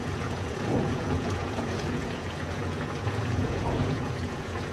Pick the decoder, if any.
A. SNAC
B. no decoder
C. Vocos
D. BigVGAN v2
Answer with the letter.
C